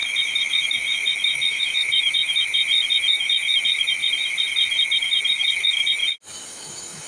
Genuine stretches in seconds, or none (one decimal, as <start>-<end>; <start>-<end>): 2.6-3.1; 4.0-4.8; 6.0-6.5